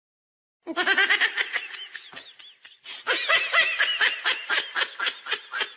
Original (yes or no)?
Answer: yes